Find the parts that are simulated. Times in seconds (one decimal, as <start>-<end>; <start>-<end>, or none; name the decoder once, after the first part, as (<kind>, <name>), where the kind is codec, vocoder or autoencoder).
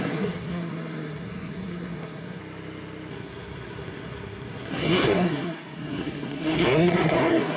0.0-2.4 (codec, SNAC); 3.1-7.6